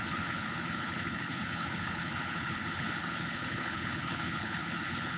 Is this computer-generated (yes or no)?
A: yes